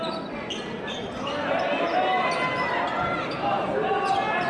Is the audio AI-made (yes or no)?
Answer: no